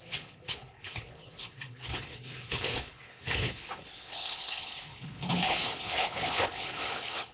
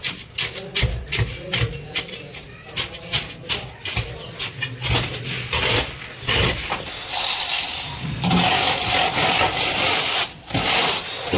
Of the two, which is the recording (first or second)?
second